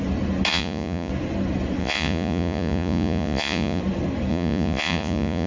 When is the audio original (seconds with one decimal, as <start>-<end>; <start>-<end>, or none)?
0.0-0.5; 1.1-1.8; 3.8-4.3